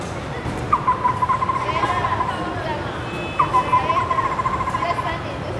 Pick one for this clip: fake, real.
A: real